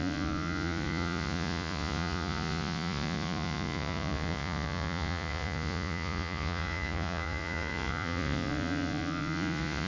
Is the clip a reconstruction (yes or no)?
yes